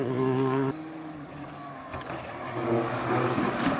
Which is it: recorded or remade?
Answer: remade